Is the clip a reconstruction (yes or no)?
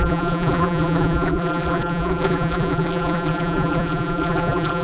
yes